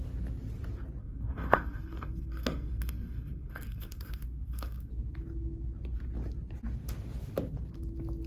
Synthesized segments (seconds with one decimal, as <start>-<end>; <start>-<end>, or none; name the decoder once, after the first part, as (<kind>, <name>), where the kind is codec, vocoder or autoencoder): 1.0-4.9 (codec, SNAC)